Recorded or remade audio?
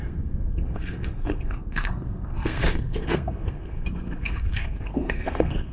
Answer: remade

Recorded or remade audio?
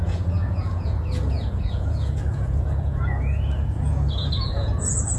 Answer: remade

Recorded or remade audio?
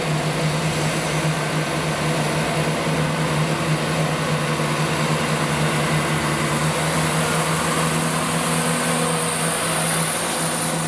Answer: recorded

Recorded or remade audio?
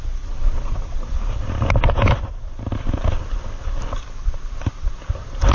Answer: recorded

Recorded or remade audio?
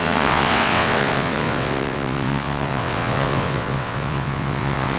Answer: remade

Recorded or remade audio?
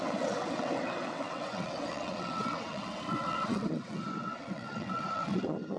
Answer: remade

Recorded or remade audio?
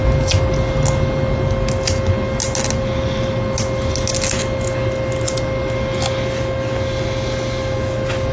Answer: recorded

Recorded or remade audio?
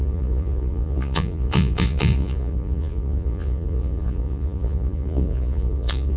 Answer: remade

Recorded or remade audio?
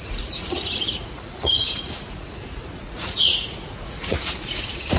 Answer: remade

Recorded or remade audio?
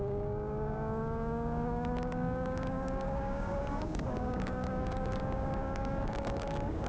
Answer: remade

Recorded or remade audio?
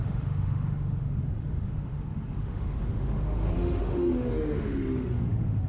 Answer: remade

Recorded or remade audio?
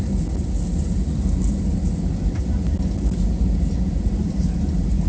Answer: recorded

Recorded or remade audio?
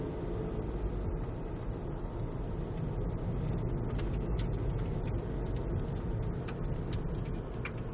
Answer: recorded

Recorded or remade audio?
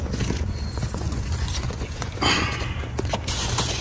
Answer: remade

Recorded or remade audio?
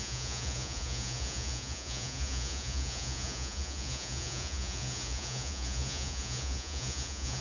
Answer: remade